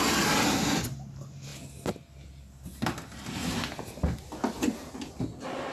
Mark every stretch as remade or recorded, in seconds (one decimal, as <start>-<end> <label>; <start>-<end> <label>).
0.0-5.7 recorded